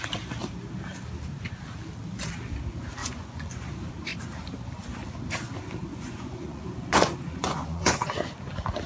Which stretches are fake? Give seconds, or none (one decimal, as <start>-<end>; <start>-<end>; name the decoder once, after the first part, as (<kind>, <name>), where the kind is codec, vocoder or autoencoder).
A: 3.0-3.6 (vocoder, Vocos); 5.9-8.4